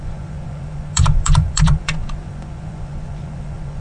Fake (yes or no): yes